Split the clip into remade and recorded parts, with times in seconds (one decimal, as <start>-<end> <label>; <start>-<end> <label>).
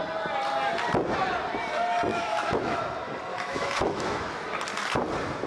0.0-2.1 recorded; 2.1-2.8 remade; 2.8-3.3 recorded; 3.3-4.4 remade; 4.4-5.5 recorded